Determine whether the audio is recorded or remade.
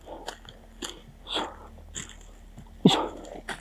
recorded